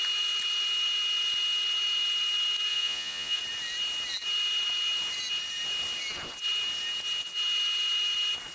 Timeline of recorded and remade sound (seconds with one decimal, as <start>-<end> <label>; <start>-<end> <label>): 0.0-2.7 recorded; 2.7-3.4 remade; 3.4-8.5 recorded

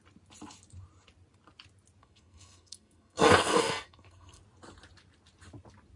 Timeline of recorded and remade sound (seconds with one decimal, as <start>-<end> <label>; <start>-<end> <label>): 0.0-2.0 recorded; 2.0-4.4 remade; 4.4-6.0 recorded

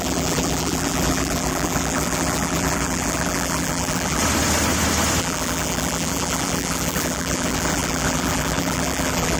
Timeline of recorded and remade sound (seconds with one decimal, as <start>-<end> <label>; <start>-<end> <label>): 0.0-4.2 remade; 4.2-5.2 recorded; 5.2-9.4 remade

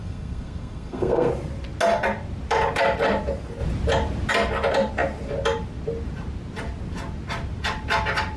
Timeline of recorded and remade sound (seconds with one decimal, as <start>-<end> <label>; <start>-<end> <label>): 0.0-1.3 remade; 1.3-8.4 recorded

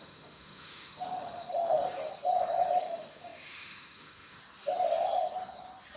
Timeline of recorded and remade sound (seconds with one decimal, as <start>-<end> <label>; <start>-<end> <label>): 0.0-1.8 remade; 1.8-2.8 recorded; 2.8-4.4 remade; 4.4-6.0 recorded

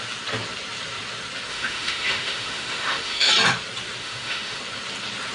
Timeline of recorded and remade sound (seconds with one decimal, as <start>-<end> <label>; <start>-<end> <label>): 0.0-1.5 recorded; 1.5-3.3 remade; 3.3-4.0 recorded; 4.0-4.6 remade; 4.6-5.3 recorded

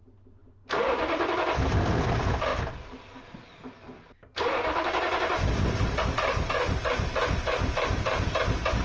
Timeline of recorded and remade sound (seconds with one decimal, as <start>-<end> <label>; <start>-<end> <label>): 0.0-8.8 recorded